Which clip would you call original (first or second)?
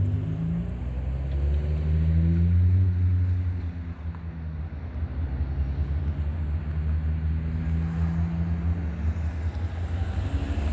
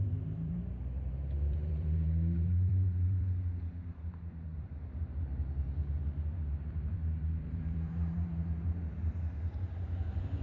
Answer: first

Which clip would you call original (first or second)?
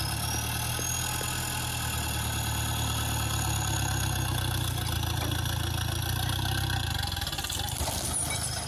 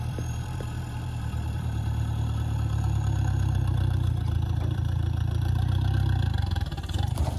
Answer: first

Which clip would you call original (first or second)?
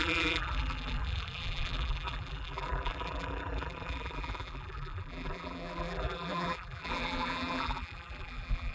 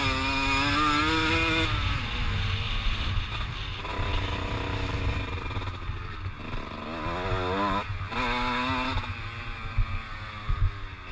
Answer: second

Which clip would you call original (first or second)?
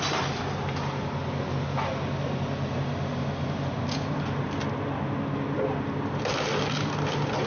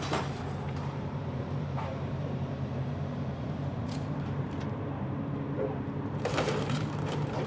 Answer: first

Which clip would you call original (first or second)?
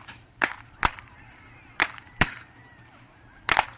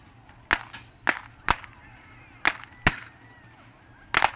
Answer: second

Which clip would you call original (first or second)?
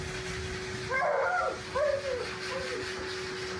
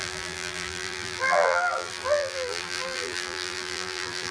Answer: first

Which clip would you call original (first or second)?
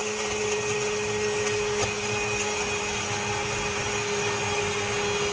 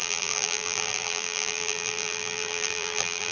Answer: first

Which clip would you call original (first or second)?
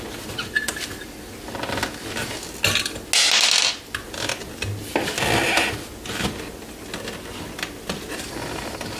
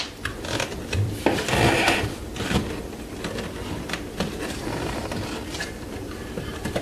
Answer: first